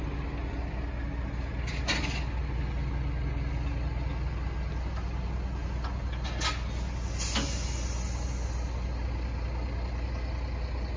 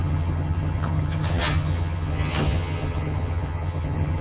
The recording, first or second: first